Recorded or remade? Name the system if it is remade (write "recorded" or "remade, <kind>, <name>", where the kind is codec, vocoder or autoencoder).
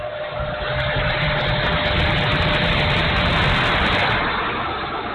recorded